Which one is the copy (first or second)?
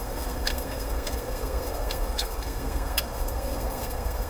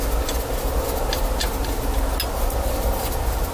first